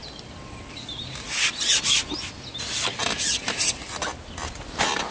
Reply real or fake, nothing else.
real